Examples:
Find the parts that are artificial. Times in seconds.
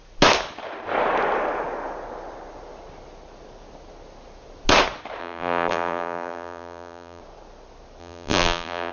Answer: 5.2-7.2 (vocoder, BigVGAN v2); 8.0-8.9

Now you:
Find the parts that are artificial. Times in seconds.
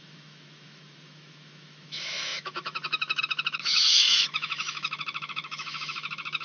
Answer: 0.0-6.4 (autoencoder, DAC-VAE)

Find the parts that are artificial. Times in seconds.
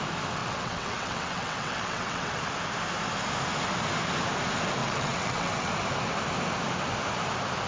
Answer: 0.4-2.4 (vocoder, WaveNeXt); 4.8-5.7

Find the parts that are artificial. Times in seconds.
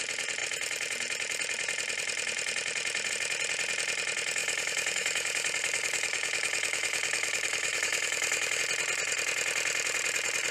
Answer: 4.4-8.6 (autoencoder, DAC-VAE)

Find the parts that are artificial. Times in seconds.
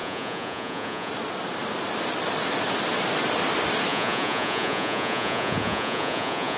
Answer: 0.0-1.1 (vocoder, Vocos); 3.9-6.6